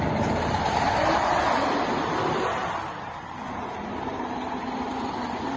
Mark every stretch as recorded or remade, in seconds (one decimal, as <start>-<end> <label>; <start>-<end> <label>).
0.0-5.6 recorded